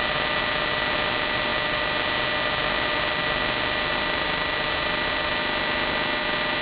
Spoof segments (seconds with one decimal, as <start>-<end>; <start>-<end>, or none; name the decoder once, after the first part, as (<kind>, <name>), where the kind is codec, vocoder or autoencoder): none